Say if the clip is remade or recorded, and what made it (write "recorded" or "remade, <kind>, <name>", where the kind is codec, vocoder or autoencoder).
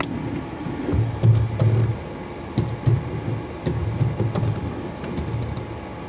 recorded